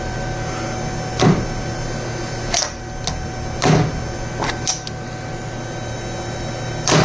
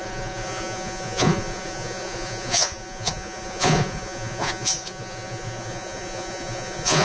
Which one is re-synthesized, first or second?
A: second